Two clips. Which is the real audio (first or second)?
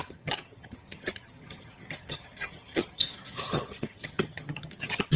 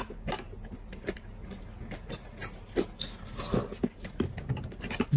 second